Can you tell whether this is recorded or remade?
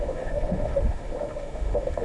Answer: remade